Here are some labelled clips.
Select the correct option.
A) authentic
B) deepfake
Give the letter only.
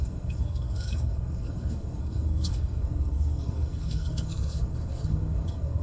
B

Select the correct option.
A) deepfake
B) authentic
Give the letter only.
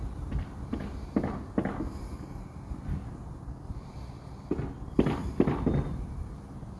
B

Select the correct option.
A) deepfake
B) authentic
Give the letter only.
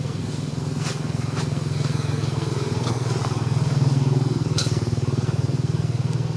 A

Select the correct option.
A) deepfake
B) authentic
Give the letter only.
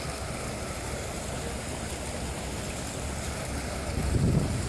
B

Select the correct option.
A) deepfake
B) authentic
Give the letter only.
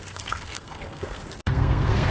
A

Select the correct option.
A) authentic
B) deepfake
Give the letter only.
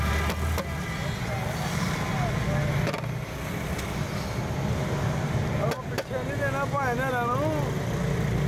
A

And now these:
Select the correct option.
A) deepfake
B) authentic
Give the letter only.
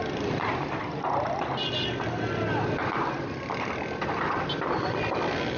B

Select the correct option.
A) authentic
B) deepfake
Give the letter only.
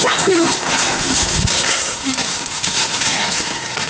B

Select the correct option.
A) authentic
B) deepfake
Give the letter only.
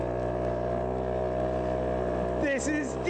A